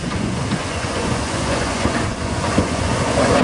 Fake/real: fake